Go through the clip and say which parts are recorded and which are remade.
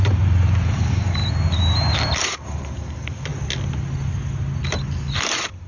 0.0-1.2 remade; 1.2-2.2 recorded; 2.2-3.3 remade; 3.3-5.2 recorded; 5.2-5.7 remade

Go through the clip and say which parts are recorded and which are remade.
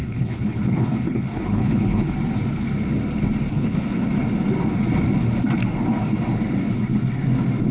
0.0-2.1 remade; 2.1-3.5 recorded; 3.5-4.1 remade; 4.1-7.7 recorded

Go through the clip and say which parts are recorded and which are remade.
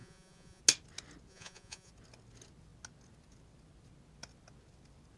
0.0-0.6 remade; 0.6-1.3 recorded; 1.3-1.9 remade; 1.9-5.2 recorded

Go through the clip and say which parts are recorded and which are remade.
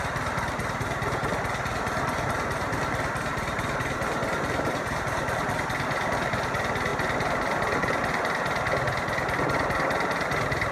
0.0-10.7 recorded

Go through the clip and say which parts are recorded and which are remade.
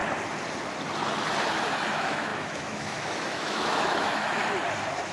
0.0-1.9 recorded; 1.9-4.4 remade; 4.4-5.1 recorded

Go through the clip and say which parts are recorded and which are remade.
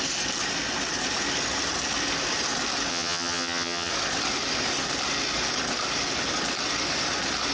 0.0-2.9 recorded; 2.9-3.9 remade; 3.9-7.5 recorded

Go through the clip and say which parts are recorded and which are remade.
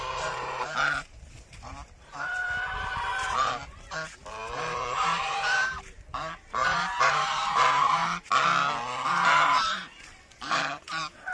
0.0-3.6 remade; 3.6-4.4 recorded; 4.4-8.0 remade; 8.0-9.1 recorded; 9.1-11.3 remade